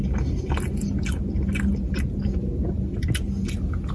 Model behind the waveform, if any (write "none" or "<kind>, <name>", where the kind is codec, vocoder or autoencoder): none